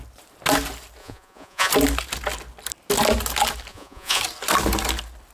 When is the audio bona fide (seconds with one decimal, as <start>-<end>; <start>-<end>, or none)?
0.0-1.0; 1.7-3.7; 4.2-5.3